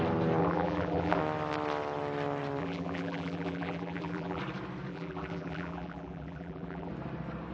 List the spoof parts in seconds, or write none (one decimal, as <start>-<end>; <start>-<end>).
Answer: 0.4-1.2; 2.6-4.4; 4.9-6.9